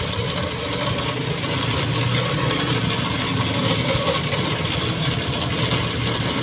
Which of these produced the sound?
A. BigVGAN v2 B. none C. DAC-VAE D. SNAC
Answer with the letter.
B